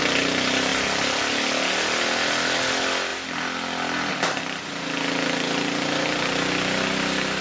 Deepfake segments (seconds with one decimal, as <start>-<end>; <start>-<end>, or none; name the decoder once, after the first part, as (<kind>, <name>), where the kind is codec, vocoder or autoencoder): none